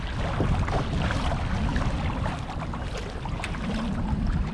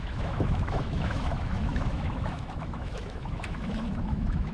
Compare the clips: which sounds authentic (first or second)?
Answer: first